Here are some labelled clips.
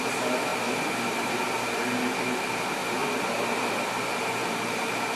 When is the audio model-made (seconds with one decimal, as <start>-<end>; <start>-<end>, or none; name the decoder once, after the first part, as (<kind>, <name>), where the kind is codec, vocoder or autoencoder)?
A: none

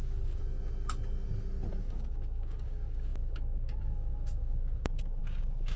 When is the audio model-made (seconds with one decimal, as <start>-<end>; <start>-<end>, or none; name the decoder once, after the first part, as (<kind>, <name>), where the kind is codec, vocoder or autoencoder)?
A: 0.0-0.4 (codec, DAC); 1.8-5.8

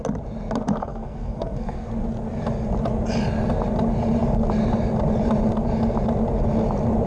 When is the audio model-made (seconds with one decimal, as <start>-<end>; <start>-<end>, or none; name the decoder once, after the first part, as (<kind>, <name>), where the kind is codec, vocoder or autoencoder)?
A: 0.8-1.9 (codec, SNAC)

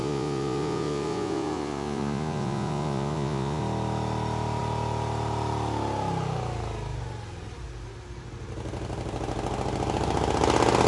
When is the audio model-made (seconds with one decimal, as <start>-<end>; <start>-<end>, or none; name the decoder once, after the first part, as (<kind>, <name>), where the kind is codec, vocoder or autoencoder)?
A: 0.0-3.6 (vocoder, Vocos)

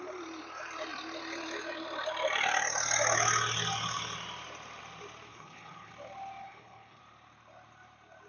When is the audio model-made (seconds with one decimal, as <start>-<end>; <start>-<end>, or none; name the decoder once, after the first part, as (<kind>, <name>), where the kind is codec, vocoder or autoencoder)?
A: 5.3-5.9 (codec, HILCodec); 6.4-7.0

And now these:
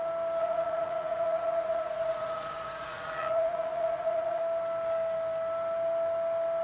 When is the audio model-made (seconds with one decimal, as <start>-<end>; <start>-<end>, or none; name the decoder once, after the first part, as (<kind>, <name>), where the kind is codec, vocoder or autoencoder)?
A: 0.4-4.4 (vocoder, Vocos)